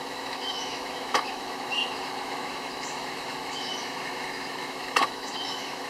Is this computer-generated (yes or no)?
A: yes